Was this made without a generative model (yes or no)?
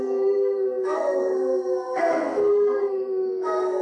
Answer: no